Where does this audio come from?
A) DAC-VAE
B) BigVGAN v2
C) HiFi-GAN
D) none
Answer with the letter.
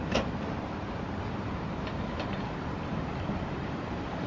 B